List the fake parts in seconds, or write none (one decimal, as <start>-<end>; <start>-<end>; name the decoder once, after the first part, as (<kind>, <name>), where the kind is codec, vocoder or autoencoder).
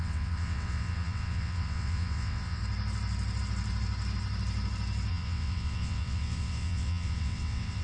0.0-2.6 (vocoder, WaveNeXt); 5.1-7.8